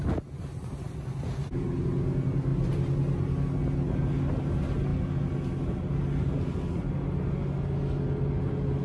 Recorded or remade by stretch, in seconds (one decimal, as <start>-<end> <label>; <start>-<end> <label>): 0.0-8.8 recorded